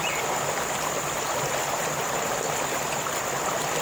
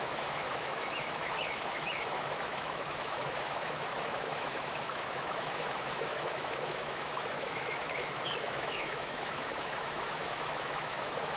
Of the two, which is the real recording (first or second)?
first